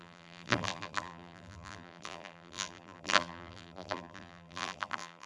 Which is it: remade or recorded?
remade